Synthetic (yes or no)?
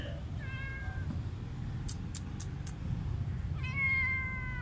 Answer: no